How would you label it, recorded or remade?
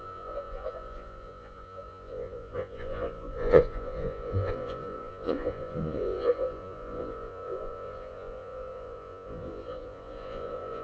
remade